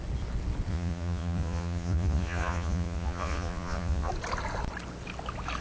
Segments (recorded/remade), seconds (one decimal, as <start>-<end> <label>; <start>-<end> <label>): 0.0-0.7 recorded; 0.7-4.1 remade; 4.1-5.6 recorded